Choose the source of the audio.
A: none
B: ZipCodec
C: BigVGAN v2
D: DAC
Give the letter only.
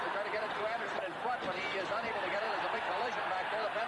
C